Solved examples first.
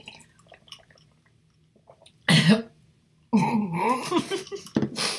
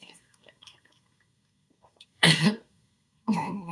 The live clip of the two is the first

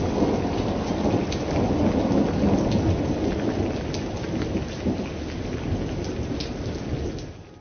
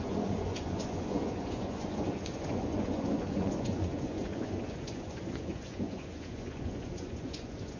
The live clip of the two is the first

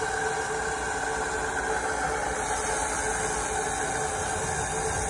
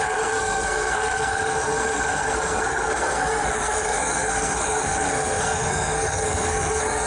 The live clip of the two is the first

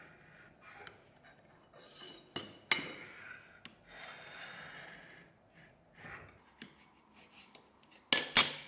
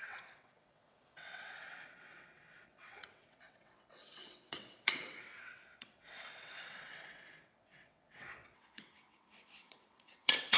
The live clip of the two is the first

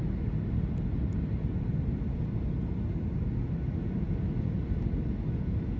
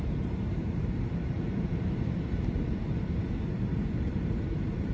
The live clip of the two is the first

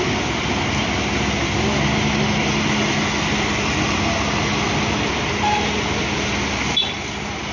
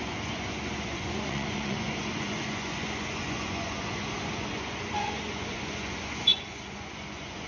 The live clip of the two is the first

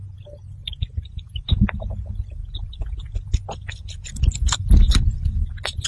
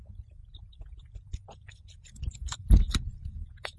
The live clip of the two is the first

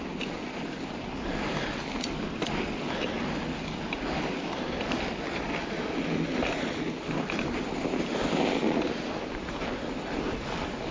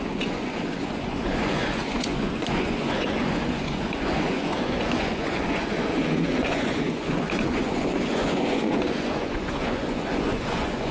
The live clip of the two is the first